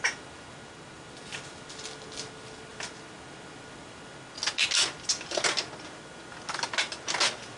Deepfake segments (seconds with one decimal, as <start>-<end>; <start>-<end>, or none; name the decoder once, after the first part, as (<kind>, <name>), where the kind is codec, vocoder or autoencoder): none